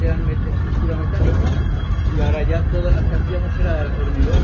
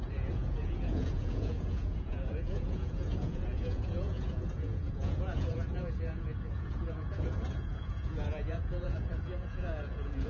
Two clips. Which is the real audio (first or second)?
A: first